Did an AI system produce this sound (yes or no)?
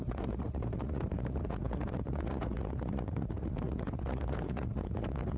yes